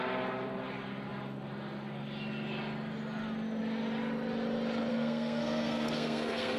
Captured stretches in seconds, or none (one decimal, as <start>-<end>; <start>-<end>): 0.0-4.9